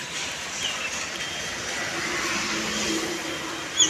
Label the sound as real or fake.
real